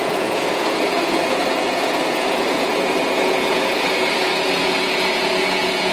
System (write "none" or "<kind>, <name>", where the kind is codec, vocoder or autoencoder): vocoder, Vocos